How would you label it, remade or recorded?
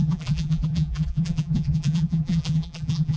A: remade